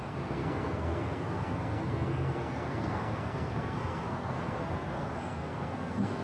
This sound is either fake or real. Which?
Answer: fake